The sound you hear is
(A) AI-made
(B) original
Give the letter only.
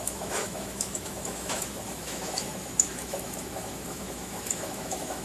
A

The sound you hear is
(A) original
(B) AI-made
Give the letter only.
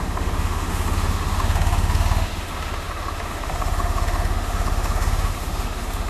B